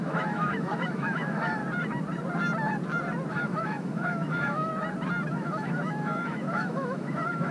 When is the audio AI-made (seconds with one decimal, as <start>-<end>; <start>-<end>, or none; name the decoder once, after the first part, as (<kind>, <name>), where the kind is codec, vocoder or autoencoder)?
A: 0.0-1.6 (autoencoder, DAC-VAE); 3.3-4.7; 5.3-7.5